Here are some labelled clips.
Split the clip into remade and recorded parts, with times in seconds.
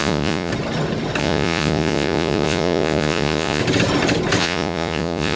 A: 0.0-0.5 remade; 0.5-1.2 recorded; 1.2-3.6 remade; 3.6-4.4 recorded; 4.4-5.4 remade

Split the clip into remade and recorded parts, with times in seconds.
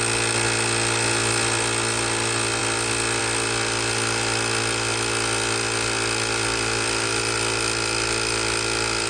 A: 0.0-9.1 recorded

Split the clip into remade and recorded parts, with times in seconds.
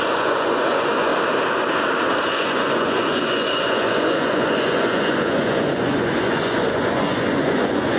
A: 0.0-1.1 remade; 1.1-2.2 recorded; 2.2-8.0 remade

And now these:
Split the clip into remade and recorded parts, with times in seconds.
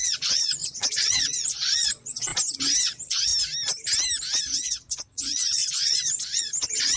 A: 0.0-2.3 remade; 2.3-2.8 recorded; 2.8-3.3 remade; 3.3-4.4 recorded; 4.4-7.0 remade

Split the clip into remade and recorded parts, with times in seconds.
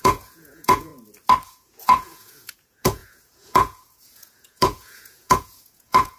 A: 0.0-0.9 remade; 0.9-1.5 recorded; 1.5-6.2 remade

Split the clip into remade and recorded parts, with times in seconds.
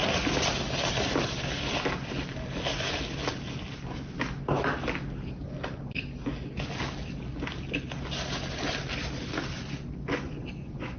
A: 0.0-10.1 recorded; 10.1-11.0 remade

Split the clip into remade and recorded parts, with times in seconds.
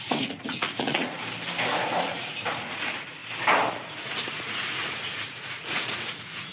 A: 0.0-1.2 remade; 1.2-2.0 recorded; 2.0-3.2 remade; 3.2-3.7 recorded; 3.7-6.5 remade